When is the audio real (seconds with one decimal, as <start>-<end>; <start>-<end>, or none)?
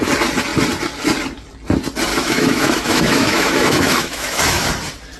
0.0-2.1; 4.7-5.2